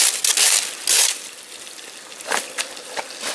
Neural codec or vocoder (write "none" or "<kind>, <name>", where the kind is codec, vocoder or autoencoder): none